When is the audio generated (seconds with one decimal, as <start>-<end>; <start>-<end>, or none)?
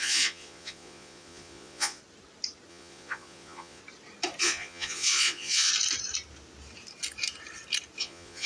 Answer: 0.0-2.0; 2.7-3.8; 4.4-5.7; 8.0-8.5